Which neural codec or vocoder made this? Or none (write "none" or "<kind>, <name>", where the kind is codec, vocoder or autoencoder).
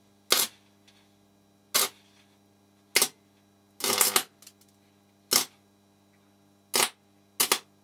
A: none